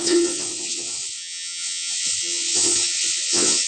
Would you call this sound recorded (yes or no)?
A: no